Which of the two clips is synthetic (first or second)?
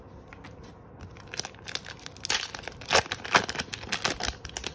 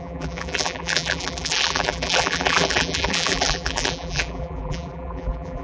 second